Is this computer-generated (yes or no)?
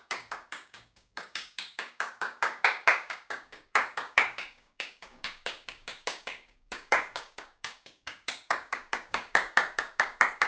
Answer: yes